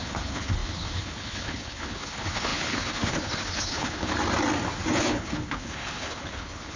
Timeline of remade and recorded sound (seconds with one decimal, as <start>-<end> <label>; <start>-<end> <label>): 0.0-4.1 remade; 4.1-4.9 recorded; 4.9-6.8 remade